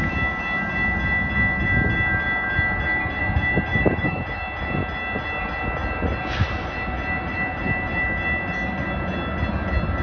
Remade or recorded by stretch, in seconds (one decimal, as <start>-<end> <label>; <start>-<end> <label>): 0.0-3.7 recorded; 3.7-4.2 remade; 4.2-10.0 recorded